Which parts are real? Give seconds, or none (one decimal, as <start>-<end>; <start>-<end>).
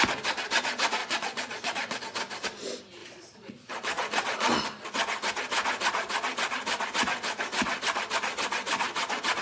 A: 0.0-1.0; 2.0-3.0; 4.5-9.4